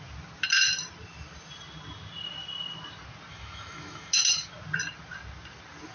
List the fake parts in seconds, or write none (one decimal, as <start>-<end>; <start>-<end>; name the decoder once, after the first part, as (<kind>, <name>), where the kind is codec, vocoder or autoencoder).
3.3-4.5 (autoencoder, DAC-VAE)